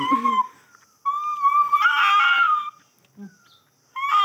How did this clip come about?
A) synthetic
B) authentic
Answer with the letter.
B